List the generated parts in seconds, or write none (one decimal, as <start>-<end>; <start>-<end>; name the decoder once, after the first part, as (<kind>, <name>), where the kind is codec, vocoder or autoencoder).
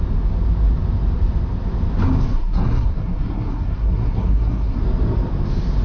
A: 2.3-4.8 (codec, SNAC)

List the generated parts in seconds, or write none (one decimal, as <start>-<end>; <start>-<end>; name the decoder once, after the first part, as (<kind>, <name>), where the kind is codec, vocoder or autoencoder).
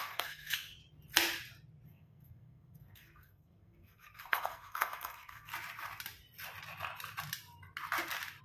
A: 0.0-0.8 (codec, SNAC); 1.9-5.5